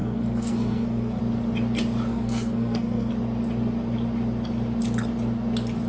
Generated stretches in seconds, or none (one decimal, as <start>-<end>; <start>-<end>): 0.0-1.2; 2.1-3.1